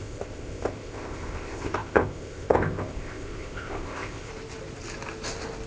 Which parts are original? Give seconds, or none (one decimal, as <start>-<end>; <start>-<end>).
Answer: 4.3-5.7